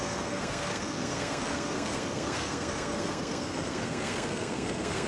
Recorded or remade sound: remade